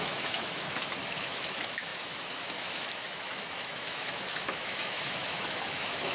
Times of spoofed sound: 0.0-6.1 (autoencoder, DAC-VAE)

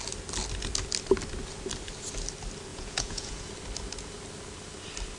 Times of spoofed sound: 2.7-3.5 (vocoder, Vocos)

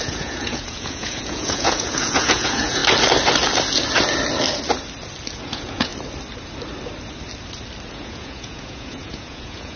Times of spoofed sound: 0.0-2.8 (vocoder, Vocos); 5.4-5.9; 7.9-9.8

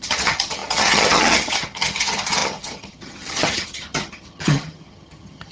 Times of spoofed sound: 0.0-5.5 (vocoder, HiFi-GAN)

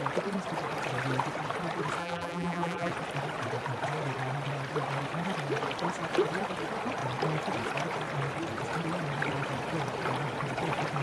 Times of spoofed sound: 2.0-2.9 (vocoder, BigVGAN v2)

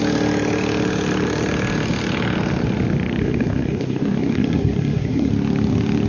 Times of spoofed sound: 3.2-5.3 (codec, SNAC)